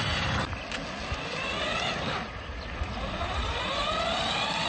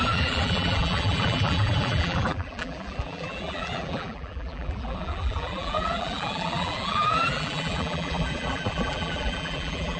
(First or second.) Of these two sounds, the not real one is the second